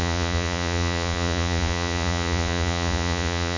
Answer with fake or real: fake